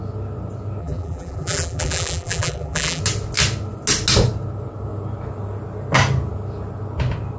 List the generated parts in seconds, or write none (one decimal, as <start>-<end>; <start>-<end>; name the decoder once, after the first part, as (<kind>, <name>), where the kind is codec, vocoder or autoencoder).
0.8-3.0 (vocoder, BigVGAN v2)

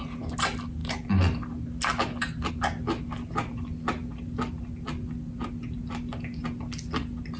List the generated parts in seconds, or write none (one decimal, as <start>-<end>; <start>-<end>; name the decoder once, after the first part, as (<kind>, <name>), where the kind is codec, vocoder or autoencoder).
none

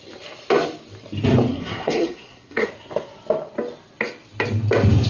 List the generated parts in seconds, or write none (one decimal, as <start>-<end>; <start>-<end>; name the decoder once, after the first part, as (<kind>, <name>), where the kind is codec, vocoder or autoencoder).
1.5-2.7 (codec, SNAC)

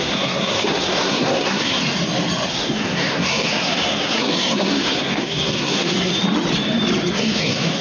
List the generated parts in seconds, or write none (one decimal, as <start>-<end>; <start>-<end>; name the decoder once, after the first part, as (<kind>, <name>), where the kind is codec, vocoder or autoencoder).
0.0-1.8 (codec, SNAC); 2.5-6.1; 7.1-7.8